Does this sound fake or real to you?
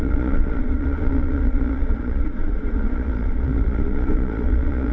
fake